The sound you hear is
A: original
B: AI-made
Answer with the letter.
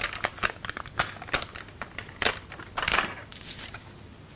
A